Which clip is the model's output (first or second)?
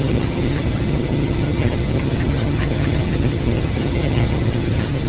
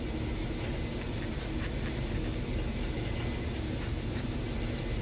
first